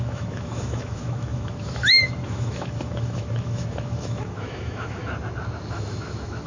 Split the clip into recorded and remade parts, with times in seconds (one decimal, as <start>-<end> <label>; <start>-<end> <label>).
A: 0.0-5.0 remade; 5.0-5.7 recorded; 5.7-6.5 remade